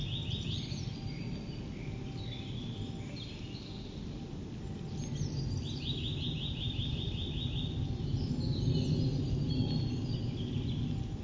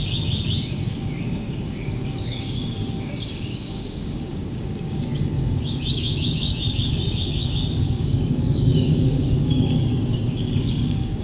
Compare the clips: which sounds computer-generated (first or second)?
second